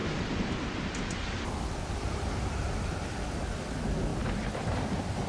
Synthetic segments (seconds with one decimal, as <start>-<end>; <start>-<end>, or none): none